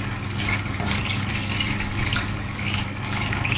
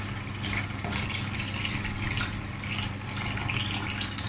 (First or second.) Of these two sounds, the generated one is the first